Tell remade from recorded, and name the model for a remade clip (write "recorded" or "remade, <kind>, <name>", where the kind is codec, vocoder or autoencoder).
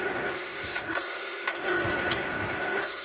remade, codec, SNAC